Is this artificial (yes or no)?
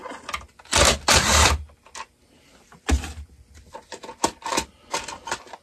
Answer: yes